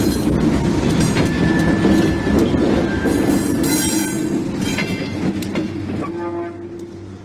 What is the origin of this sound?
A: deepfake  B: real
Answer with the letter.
B